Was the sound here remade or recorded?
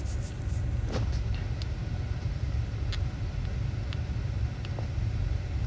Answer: recorded